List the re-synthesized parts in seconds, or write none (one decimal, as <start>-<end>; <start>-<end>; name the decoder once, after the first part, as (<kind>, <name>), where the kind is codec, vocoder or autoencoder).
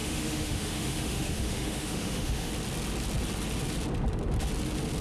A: 0.0-2.5 (autoencoder, DAC-VAE)